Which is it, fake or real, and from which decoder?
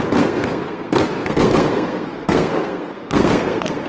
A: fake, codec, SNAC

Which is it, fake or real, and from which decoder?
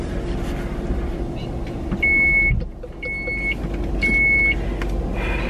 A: real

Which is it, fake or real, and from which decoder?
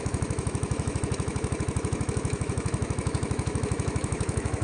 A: fake, autoencoder, DAC-VAE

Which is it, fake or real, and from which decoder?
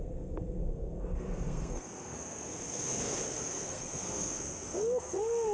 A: fake, codec, SNAC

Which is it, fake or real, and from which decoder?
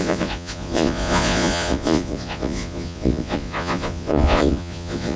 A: fake, vocoder, Vocos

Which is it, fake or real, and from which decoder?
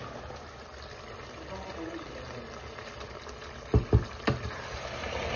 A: real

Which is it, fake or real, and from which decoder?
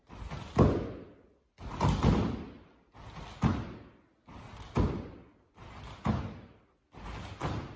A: real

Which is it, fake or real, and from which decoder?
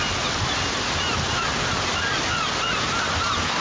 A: real